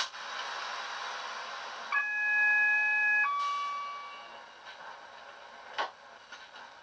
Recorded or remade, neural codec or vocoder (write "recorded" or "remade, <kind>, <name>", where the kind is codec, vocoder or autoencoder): recorded